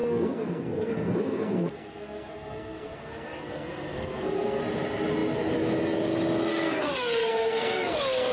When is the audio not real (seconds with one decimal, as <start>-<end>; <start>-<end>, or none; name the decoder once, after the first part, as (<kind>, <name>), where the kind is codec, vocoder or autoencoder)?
0.0-4.6 (codec, SNAC); 6.5-8.3